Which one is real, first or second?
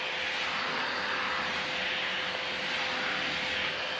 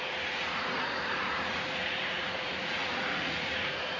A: first